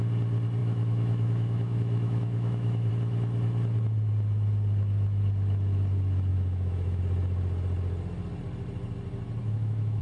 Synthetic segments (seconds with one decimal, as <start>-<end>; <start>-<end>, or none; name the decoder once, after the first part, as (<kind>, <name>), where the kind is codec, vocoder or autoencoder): 0.6-2.9 (autoencoder, DAC-VAE); 6.3-7.0; 9.4-10.0

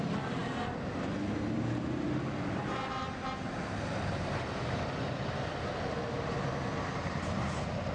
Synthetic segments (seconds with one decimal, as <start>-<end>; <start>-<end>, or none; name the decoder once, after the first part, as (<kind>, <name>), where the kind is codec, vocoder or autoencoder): none

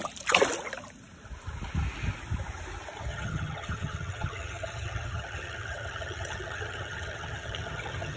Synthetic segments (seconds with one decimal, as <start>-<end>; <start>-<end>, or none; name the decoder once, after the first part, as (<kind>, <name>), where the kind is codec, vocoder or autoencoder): 3.1-8.2 (vocoder, HiFi-GAN)

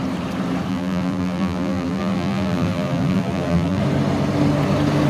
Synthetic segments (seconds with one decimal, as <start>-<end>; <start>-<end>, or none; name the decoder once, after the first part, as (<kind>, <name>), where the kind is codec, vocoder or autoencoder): 0.7-3.8 (vocoder, BigVGAN v2)

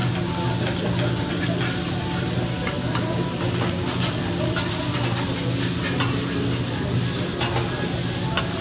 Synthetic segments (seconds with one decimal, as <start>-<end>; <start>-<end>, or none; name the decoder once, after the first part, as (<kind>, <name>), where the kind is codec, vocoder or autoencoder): none

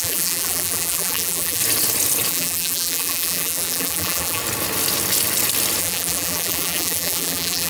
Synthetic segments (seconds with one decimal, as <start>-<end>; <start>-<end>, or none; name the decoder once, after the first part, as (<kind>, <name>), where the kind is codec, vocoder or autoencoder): 0.0-1.6 (vocoder, BigVGAN v2); 2.3-4.4; 5.8-7.7

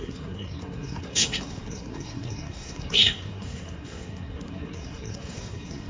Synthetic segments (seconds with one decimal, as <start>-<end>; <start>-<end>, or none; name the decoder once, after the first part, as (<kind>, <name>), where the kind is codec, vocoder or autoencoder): 0.0-5.9 (codec, SNAC)

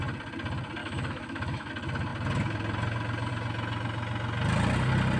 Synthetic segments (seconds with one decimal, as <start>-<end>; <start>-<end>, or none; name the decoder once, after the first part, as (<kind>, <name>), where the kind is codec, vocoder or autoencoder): 0.8-1.7 (autoencoder, DAC-VAE)